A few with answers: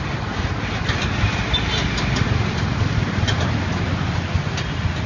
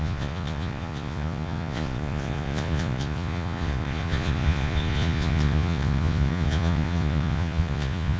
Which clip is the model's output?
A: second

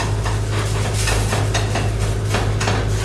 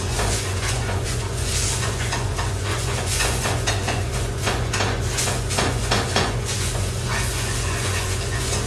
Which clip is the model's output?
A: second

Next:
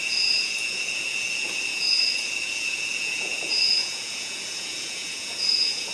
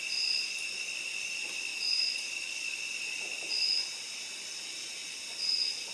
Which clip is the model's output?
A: first